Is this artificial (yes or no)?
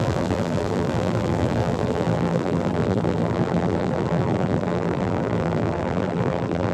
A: yes